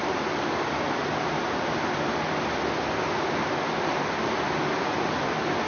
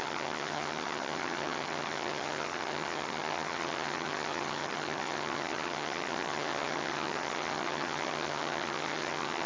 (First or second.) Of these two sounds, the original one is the first